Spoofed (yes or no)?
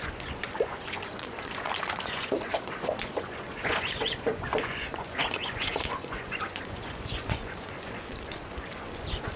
yes